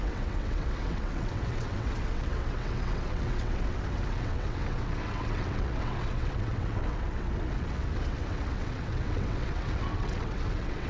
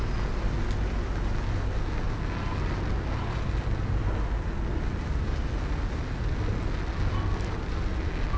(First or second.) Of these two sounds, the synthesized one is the first